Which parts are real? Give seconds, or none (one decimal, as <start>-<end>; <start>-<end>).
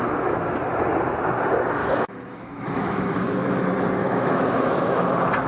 0.0-1.8; 3.5-4.0; 5.1-5.5